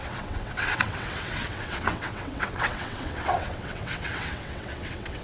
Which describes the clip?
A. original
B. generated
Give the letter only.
B